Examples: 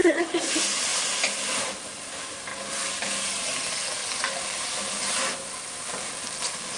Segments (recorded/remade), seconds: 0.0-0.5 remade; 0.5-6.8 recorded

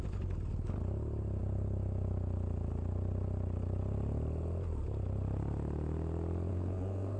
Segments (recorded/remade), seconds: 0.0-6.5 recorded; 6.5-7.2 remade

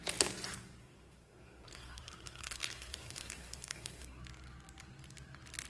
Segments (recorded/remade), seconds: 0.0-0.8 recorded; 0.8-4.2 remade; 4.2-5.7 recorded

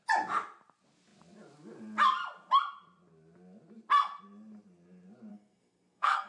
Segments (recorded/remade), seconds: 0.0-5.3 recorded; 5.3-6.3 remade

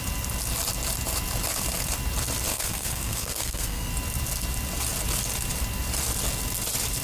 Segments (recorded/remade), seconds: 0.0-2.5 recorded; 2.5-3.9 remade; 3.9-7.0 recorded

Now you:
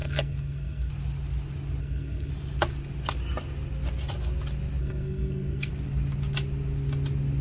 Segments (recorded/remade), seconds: 0.0-0.9 remade; 0.9-1.8 recorded; 1.8-2.3 remade; 2.3-4.8 recorded; 4.8-5.7 remade; 5.7-7.4 recorded